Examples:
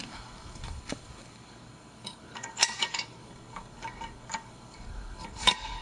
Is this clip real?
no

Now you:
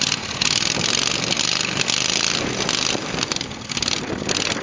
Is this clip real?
yes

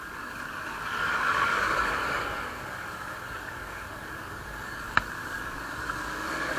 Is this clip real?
no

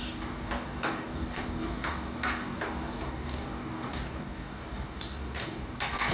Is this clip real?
no